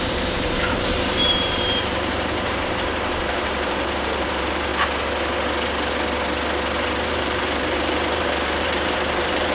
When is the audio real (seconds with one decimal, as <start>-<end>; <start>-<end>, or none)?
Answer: 4.7-7.1

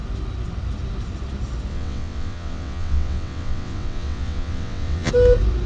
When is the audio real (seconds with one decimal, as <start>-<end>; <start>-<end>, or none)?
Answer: 0.0-1.7; 5.1-5.7